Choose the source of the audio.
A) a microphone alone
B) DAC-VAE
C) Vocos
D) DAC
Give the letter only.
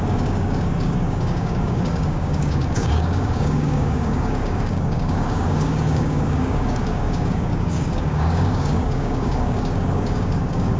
D